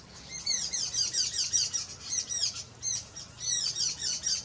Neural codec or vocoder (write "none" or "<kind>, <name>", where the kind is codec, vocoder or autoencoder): none